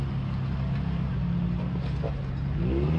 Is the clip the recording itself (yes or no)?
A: yes